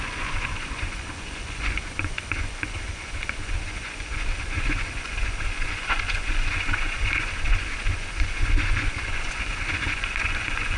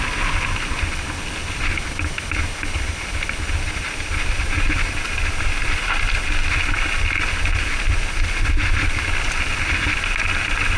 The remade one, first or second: first